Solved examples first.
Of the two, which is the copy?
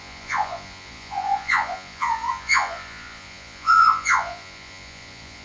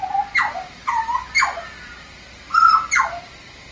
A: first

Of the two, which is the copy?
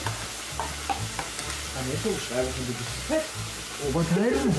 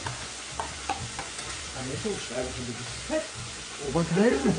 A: second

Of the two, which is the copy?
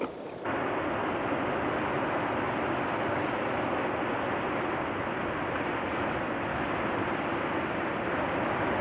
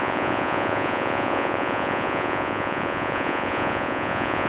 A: second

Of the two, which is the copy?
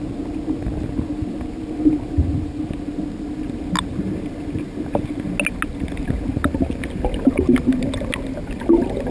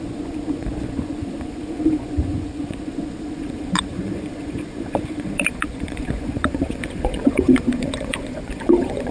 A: second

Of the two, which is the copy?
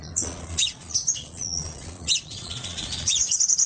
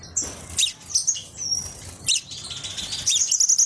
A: first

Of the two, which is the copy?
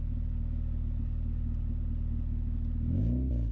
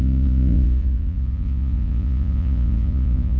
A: second